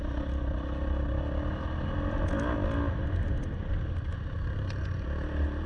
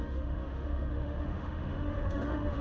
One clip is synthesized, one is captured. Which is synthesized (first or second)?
second